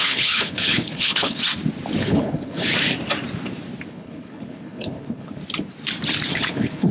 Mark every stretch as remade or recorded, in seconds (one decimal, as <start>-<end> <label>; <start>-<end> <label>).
0.0-1.4 remade; 1.4-2.0 recorded; 2.0-2.7 remade; 2.7-3.9 recorded; 3.9-5.4 remade; 5.4-6.3 recorded; 6.3-6.9 remade